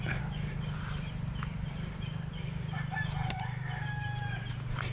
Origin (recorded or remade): remade